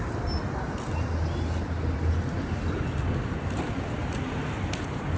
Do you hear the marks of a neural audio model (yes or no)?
no